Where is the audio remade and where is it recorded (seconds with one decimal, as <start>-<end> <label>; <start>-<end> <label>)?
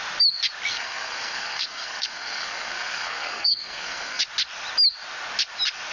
0.0-0.7 recorded; 0.7-4.2 remade; 4.2-5.9 recorded